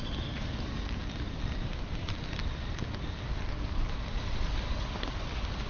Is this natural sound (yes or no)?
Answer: no